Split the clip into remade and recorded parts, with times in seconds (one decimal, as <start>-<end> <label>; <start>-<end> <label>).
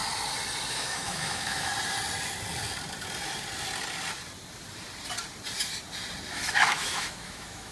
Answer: 0.0-0.7 recorded; 0.7-1.7 remade; 1.7-6.3 recorded; 6.3-7.7 remade